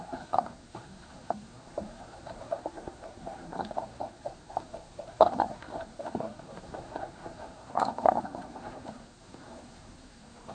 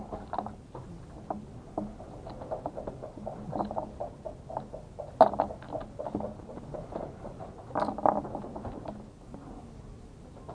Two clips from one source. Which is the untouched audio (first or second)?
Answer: second